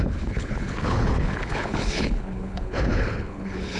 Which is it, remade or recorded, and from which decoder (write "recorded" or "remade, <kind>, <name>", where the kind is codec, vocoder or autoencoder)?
remade, codec, HILCodec